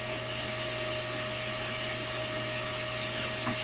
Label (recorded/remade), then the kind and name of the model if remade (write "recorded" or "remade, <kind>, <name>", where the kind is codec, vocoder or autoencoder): recorded